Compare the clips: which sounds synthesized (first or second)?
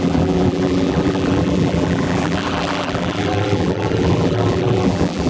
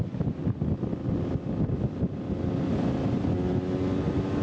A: first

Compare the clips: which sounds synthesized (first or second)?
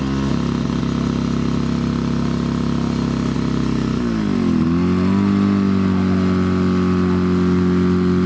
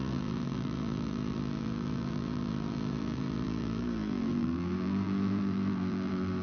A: second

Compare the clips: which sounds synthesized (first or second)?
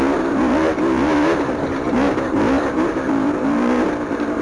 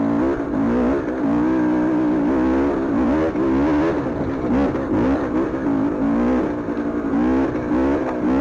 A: first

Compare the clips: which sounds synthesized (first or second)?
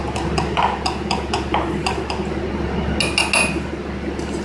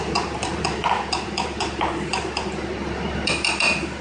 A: second